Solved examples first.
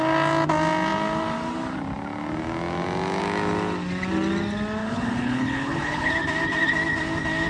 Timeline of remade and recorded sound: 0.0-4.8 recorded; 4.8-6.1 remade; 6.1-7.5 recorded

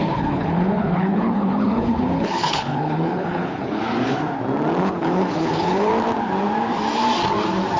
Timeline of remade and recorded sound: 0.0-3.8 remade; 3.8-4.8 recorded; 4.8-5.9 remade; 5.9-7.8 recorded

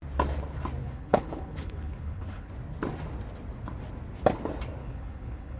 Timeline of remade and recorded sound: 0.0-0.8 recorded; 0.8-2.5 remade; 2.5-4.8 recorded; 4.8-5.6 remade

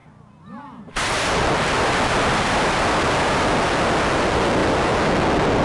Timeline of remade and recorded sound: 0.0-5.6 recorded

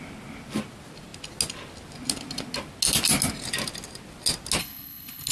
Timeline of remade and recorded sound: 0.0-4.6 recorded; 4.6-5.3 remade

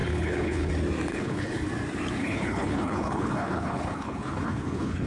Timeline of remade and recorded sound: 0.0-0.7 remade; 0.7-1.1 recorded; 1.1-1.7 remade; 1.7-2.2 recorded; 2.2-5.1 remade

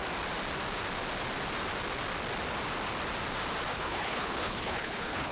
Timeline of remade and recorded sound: 0.0-3.7 recorded; 3.7-5.3 remade